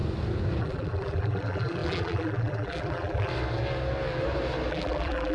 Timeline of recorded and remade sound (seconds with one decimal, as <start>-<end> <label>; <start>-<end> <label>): 0.0-0.6 recorded; 0.6-3.3 remade; 3.3-4.7 recorded; 4.7-5.3 remade